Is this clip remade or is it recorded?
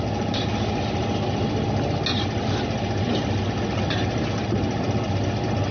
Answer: recorded